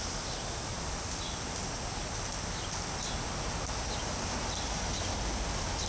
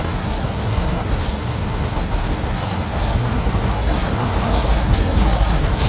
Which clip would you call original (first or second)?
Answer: first